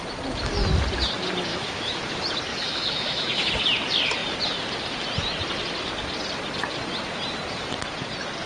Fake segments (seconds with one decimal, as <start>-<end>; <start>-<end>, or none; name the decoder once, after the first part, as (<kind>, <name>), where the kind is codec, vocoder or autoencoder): 1.5-2.0 (autoencoder, DAC-VAE); 2.5-3.5